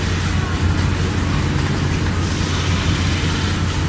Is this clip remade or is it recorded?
recorded